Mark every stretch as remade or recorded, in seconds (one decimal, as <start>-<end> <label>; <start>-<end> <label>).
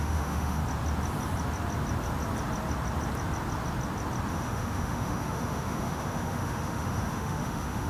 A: 0.0-0.6 remade; 0.6-4.3 recorded; 4.3-7.9 remade